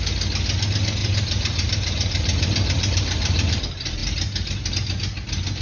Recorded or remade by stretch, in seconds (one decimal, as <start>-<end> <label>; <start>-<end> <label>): 0.0-1.0 recorded; 1.0-3.6 remade; 3.6-5.6 recorded